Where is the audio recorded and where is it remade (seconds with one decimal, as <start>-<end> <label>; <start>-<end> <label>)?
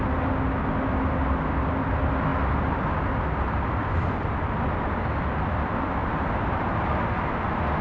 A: 0.0-7.8 recorded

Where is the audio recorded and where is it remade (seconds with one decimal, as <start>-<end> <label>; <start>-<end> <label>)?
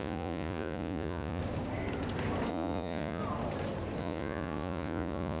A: 0.0-1.4 remade; 1.4-2.5 recorded; 2.5-3.2 remade; 3.2-4.0 recorded; 4.0-5.4 remade